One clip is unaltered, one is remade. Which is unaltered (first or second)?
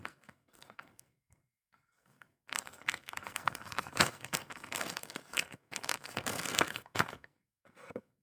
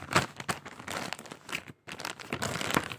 second